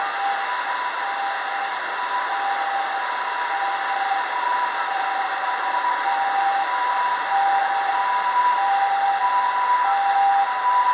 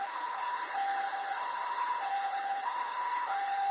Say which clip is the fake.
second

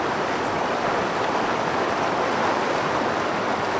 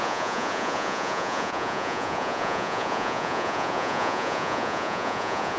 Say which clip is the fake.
second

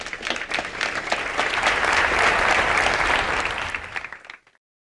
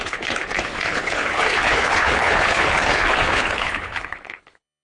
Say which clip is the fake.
second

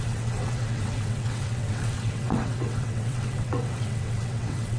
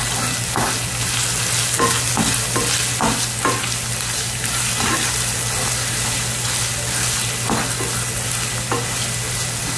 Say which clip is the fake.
first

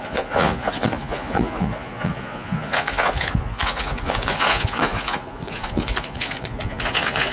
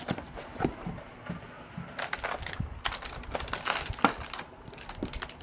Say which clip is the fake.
first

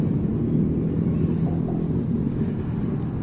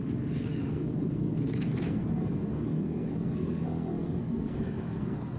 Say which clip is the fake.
second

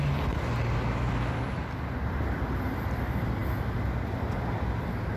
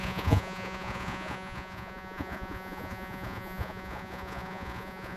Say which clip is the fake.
second